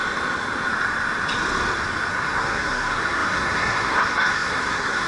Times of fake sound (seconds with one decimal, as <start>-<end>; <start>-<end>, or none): 2.1-5.1